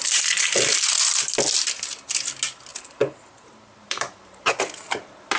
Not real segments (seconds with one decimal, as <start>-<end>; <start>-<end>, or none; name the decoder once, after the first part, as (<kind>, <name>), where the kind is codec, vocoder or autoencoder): 2.7-4.6 (vocoder, BigVGAN v2)